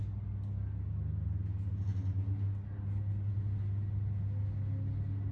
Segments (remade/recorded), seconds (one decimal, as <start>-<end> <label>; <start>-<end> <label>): 0.0-5.3 recorded